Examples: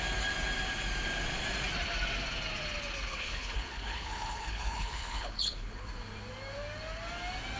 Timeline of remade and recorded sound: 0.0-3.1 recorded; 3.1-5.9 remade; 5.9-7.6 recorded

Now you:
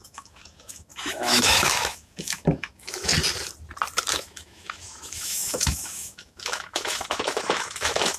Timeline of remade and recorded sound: 0.0-3.1 remade; 3.1-4.1 recorded; 4.1-8.2 remade

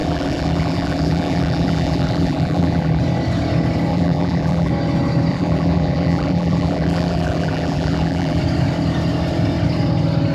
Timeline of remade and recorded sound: 0.0-3.0 remade; 3.0-3.9 recorded; 3.9-4.7 remade; 4.7-5.3 recorded; 5.3-8.4 remade; 8.4-10.3 recorded

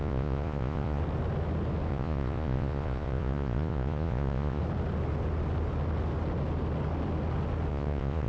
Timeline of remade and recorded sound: 0.0-1.0 remade; 1.0-1.9 recorded; 1.9-4.6 remade; 4.6-7.7 recorded; 7.7-8.3 remade

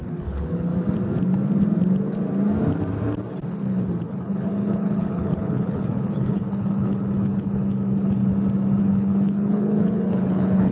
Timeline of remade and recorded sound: 0.0-0.7 remade; 0.7-3.5 recorded; 3.5-8.3 remade; 8.3-8.8 recorded; 8.8-10.7 remade